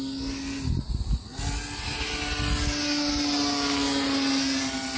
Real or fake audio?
real